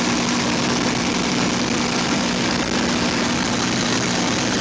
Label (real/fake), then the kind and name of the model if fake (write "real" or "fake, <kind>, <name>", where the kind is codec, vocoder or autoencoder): real